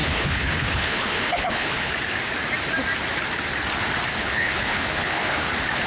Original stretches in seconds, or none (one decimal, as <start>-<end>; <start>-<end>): 1.9-4.1; 5.5-5.9